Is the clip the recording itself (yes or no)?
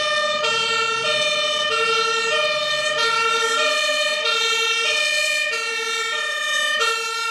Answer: no